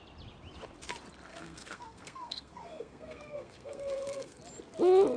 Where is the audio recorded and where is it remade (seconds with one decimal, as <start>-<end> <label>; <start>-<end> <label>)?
0.0-1.3 recorded; 1.3-4.4 remade; 4.4-5.2 recorded